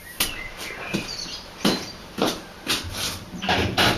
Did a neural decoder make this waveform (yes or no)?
yes